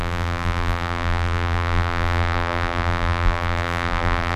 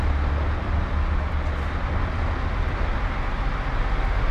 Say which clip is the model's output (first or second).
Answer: first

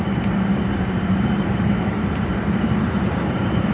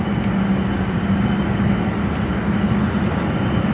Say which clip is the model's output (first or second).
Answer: first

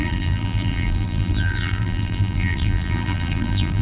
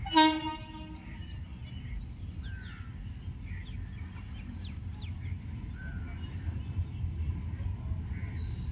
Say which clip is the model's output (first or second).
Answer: first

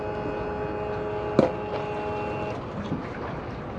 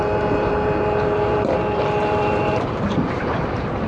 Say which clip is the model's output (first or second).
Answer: second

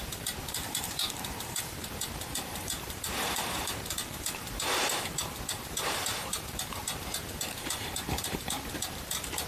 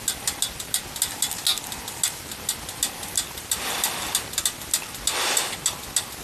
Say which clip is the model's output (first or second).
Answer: first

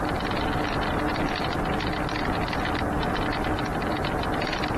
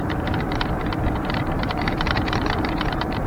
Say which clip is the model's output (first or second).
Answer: second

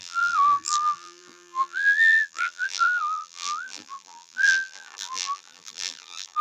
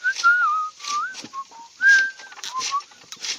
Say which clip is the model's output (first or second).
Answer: first